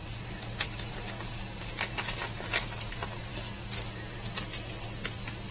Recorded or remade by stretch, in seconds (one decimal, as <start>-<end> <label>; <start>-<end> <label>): 0.0-5.5 recorded